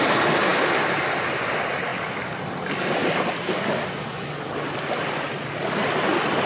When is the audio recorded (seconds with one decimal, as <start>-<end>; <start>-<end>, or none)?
0.0-6.5